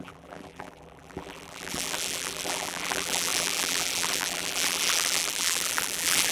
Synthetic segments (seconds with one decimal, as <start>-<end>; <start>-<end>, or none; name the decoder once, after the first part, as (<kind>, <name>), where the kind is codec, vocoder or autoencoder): 0.0-6.3 (vocoder, BigVGAN v2)